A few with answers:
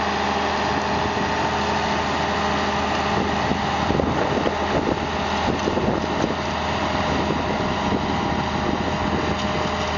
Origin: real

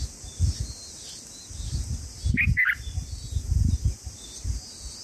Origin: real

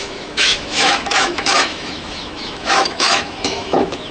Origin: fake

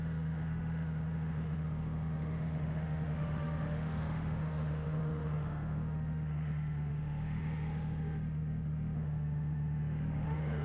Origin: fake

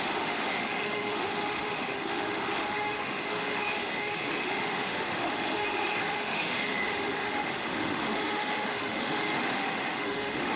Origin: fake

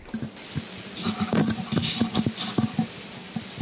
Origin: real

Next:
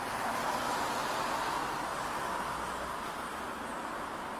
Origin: real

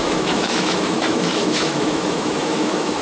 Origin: fake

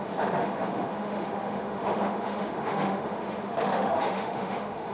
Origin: fake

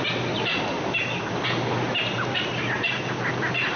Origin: real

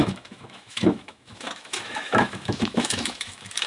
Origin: fake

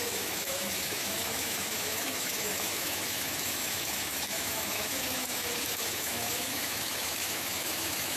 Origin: fake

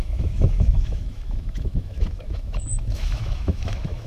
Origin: fake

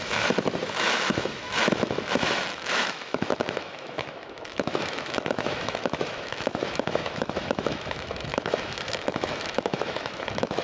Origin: fake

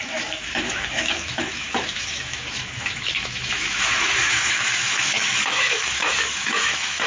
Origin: fake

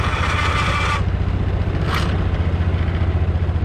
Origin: real